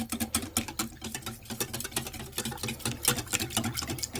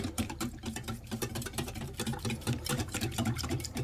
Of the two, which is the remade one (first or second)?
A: second